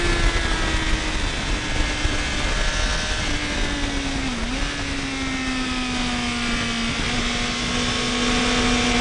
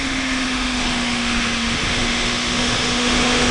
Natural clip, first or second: first